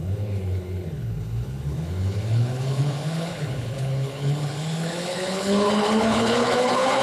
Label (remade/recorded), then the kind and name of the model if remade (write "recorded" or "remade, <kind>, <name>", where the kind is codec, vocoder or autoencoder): remade, codec, HILCodec